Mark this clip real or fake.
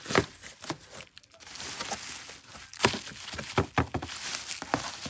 real